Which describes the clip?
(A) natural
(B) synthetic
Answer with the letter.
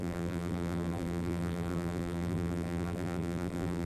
B